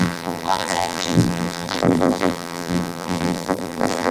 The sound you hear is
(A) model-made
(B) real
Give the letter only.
A